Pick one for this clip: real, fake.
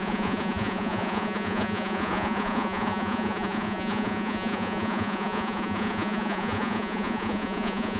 fake